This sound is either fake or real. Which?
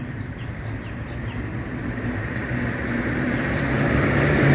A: fake